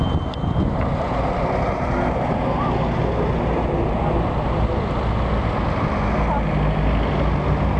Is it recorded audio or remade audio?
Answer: recorded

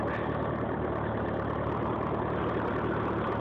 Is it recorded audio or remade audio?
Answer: recorded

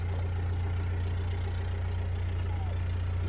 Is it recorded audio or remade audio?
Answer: recorded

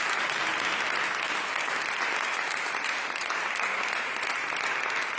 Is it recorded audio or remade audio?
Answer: recorded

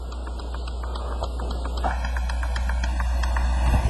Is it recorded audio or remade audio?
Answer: recorded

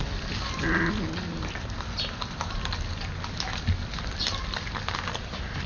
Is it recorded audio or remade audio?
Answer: recorded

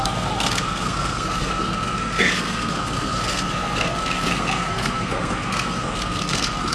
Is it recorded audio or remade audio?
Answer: remade